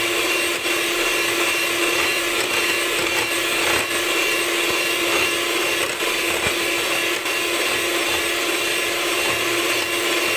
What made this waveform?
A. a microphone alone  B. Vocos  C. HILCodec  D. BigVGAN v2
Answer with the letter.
A